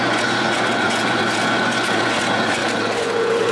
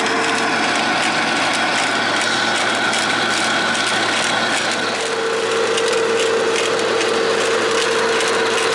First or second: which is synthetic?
first